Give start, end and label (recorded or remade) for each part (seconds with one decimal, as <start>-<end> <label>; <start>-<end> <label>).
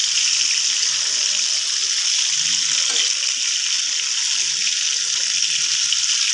0.0-6.3 recorded